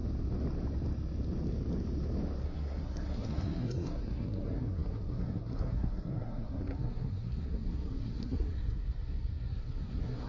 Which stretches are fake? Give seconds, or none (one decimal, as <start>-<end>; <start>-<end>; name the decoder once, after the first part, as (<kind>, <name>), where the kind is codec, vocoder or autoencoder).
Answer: 2.4-10.3 (codec, SNAC)